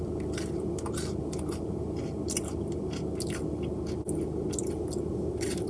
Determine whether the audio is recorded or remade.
recorded